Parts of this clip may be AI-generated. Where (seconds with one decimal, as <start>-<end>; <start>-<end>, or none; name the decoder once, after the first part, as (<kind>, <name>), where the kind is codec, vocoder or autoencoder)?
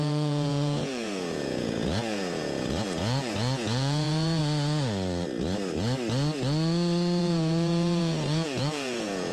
0.0-4.4 (vocoder, Vocos); 7.2-9.3